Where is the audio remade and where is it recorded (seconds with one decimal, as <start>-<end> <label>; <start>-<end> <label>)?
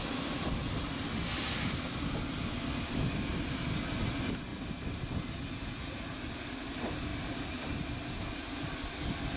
0.0-9.4 recorded